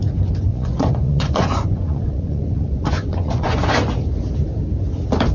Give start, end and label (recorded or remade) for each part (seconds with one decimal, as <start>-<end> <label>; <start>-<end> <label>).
0.0-0.5 recorded; 0.5-3.7 remade; 3.7-5.3 recorded